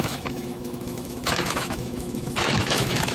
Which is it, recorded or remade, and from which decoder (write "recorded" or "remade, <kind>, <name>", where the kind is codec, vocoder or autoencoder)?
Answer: remade, autoencoder, DAC-VAE